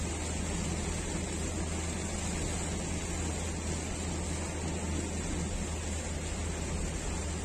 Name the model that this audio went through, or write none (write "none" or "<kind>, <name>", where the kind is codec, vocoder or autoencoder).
none